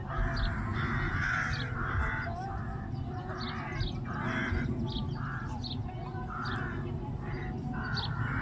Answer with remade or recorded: recorded